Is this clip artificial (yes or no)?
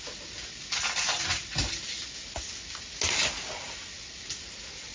no